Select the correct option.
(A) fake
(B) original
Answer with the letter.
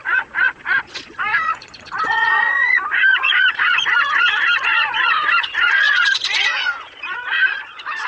A